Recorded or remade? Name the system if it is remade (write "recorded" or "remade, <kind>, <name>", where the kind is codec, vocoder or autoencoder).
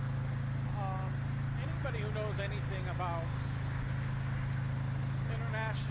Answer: recorded